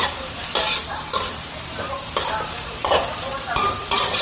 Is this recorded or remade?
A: remade